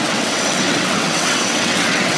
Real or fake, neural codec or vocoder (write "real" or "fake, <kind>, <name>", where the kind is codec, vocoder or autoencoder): fake, vocoder, WaveNeXt